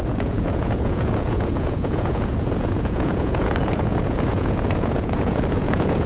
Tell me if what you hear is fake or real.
fake